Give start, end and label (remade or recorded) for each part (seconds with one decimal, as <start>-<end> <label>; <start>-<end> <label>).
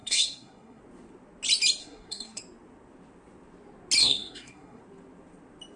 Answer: 0.0-0.8 remade; 0.8-1.8 recorded; 1.8-2.4 remade; 2.4-4.0 recorded; 4.0-4.8 remade; 4.8-5.8 recorded